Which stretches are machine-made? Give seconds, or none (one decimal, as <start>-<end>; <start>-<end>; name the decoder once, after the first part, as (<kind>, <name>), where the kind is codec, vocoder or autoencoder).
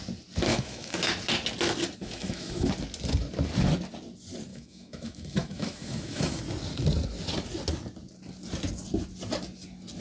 0.5-1.1 (autoencoder, DAC-VAE); 2.0-2.7; 4.5-6.4